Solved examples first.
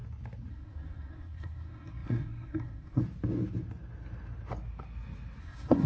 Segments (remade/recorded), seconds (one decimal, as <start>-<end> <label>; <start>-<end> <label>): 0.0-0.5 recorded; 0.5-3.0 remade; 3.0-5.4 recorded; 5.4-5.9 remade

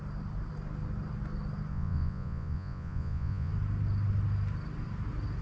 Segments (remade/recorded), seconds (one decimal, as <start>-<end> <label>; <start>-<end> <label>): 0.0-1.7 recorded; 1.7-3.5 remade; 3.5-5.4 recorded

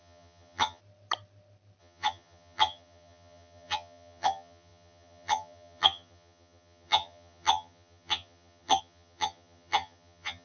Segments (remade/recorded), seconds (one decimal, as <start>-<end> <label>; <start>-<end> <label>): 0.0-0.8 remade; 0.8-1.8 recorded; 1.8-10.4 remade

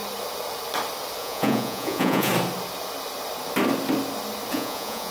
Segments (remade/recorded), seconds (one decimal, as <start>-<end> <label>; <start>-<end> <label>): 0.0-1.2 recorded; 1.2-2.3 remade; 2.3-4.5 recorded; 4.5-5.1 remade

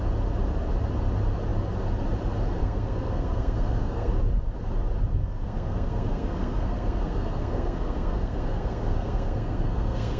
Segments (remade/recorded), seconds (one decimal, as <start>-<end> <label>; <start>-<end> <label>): 0.0-2.6 recorded; 2.6-4.1 remade; 4.1-5.2 recorded; 5.2-10.2 remade

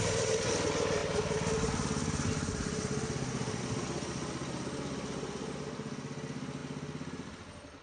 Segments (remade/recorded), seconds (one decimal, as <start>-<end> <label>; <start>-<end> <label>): 0.0-7.8 recorded

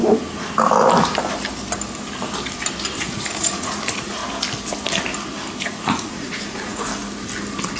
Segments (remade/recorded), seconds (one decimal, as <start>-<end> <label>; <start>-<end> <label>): 0.0-3.0 recorded; 3.0-4.2 remade; 4.2-5.6 recorded; 5.6-6.9 remade; 6.9-7.8 recorded

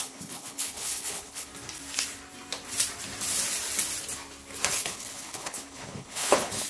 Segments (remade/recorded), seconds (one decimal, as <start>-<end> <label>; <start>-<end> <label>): 0.0-1.5 remade; 1.5-4.7 recorded; 4.7-6.7 remade